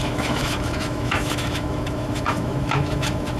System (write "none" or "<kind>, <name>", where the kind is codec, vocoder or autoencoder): autoencoder, DAC-VAE